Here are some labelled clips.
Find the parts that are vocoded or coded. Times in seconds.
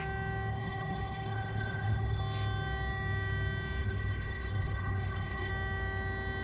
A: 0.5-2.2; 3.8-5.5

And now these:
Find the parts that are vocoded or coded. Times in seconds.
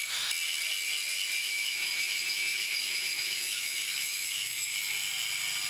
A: 1.4-4.8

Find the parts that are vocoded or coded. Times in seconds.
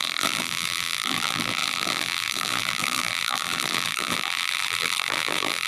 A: 0.0-5.7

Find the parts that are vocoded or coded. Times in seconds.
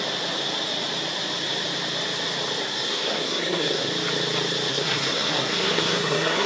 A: 2.6-3.9; 4.7-6.5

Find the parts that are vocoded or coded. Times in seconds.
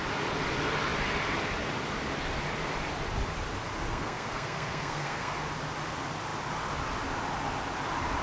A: 3.9-5.3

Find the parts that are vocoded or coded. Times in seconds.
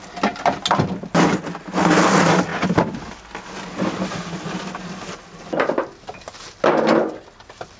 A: none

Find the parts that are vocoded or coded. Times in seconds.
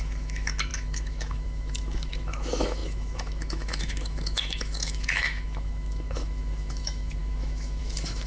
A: 0.0-8.3